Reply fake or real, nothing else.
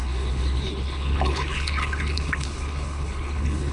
fake